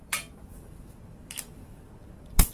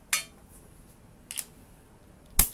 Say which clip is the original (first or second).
second